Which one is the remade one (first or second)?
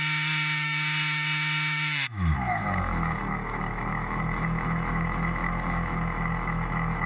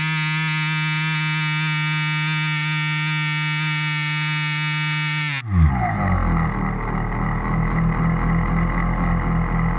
first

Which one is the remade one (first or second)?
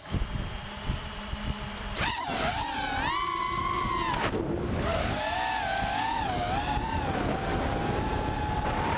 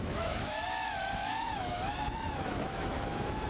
second